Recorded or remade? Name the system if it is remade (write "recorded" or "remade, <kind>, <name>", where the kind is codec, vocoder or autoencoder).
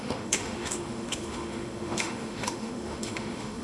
remade, autoencoder, DAC-VAE